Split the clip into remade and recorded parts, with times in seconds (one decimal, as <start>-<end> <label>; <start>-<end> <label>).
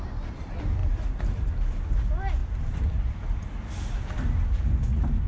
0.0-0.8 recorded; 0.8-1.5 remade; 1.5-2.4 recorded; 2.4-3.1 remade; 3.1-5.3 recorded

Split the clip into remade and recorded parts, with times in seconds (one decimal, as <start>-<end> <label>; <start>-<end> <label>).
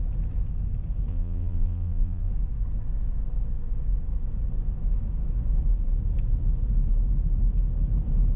0.0-1.1 recorded; 1.1-2.3 remade; 2.3-8.4 recorded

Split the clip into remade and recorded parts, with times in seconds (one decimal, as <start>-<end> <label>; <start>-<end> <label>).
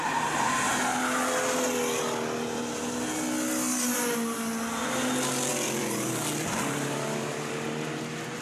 0.0-5.5 recorded; 5.5-6.1 remade; 6.1-8.4 recorded